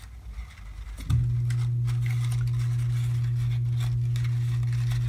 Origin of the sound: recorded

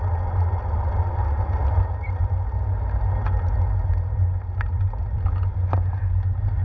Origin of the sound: recorded